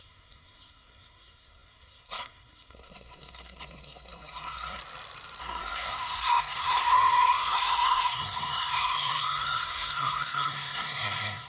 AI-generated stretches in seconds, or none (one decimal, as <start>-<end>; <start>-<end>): 0.0-4.8; 5.4-11.5